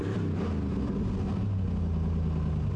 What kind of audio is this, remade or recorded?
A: recorded